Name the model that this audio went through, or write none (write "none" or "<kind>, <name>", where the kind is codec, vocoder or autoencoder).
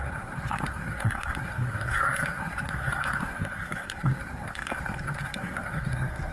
codec, SNAC